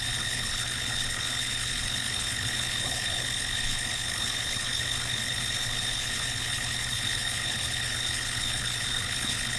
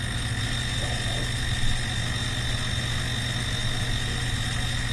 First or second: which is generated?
first